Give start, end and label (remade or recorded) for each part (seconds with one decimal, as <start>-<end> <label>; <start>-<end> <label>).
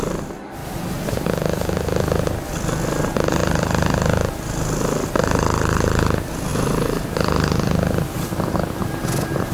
0.0-0.6 remade; 0.6-1.1 recorded; 1.1-9.5 remade